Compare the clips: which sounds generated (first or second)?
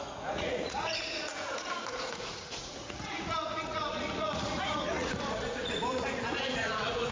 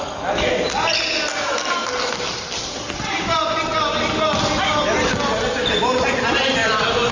first